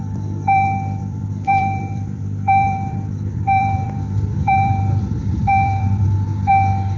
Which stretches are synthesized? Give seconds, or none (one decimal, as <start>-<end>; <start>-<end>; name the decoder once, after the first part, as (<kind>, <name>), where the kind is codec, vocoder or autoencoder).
0.0-6.5 (vocoder, BigVGAN v2)